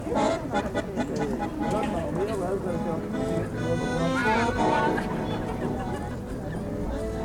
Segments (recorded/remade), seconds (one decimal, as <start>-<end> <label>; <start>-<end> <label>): 0.0-1.5 recorded; 1.5-2.0 remade; 2.0-4.2 recorded; 4.2-5.9 remade; 5.9-7.2 recorded